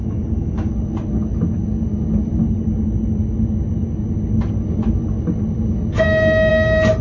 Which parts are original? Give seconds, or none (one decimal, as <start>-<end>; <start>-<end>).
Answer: 0.7-7.0